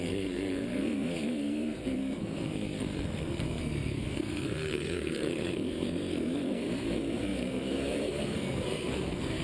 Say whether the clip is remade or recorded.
remade